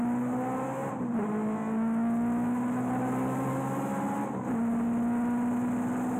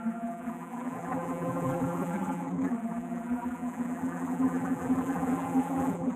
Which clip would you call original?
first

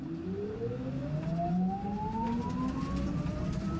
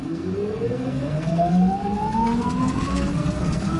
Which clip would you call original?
first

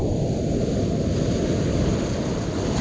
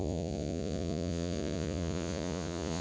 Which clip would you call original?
first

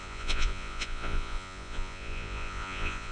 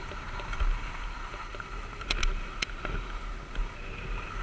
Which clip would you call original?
second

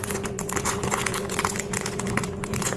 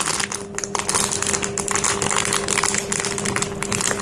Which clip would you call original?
second